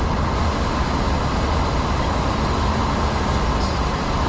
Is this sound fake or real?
real